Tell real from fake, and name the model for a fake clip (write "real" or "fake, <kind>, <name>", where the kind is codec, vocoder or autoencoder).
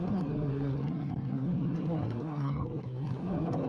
fake, codec, SNAC